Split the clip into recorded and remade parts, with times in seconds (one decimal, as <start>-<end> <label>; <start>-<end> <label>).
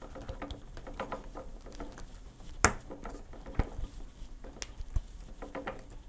0.0-6.1 recorded